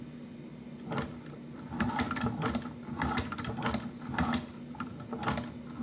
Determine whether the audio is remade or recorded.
recorded